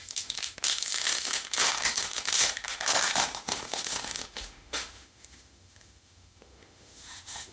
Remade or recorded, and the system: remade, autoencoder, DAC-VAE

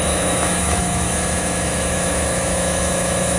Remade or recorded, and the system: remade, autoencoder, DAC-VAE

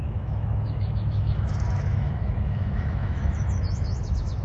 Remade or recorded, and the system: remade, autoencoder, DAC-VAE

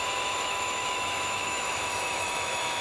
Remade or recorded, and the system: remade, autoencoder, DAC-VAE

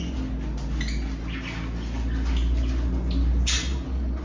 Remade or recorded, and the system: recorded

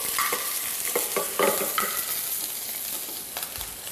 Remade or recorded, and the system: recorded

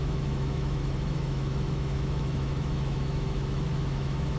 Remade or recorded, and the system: remade, autoencoder, DAC-VAE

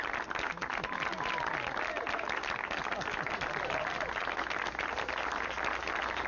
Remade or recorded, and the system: recorded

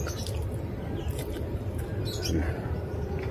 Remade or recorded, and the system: recorded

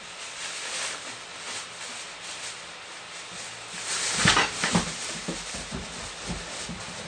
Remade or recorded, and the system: recorded